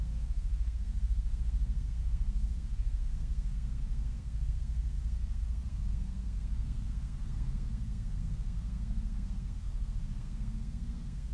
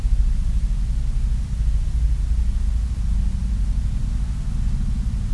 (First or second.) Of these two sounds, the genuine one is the second